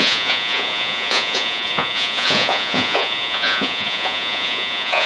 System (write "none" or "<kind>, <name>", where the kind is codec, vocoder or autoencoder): vocoder, Vocos